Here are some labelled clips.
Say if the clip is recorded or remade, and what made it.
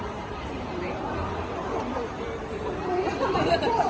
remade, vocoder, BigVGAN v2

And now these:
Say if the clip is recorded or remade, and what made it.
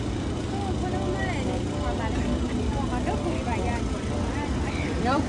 recorded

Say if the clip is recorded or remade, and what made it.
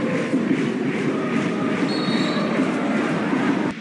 recorded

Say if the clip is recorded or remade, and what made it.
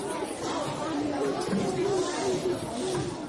remade, vocoder, BigVGAN v2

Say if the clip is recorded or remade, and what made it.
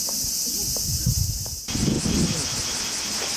recorded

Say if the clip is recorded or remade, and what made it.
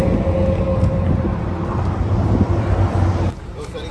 remade, vocoder, BigVGAN v2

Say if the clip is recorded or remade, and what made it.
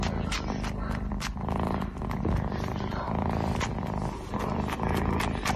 recorded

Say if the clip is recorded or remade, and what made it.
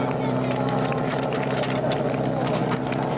recorded